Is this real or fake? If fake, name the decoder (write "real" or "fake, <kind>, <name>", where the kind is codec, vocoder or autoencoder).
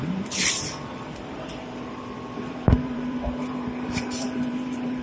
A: fake, vocoder, BigVGAN v2